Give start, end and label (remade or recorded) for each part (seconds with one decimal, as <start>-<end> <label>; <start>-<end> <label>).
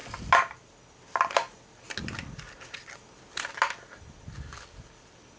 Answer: 0.0-5.4 recorded